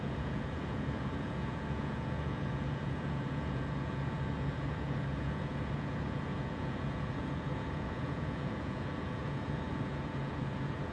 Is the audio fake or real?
fake